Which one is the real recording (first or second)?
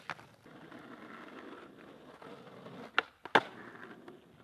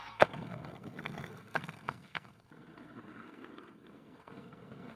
first